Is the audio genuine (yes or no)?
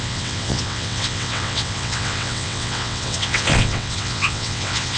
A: no